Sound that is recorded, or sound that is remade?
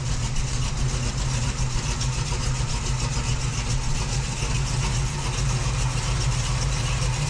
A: recorded